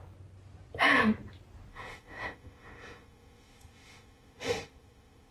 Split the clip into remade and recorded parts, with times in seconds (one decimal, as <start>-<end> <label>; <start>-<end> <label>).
0.0-1.7 recorded; 1.7-5.3 remade